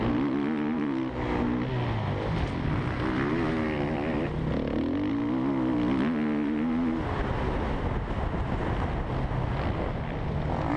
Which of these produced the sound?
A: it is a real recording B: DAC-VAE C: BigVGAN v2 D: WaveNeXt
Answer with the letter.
A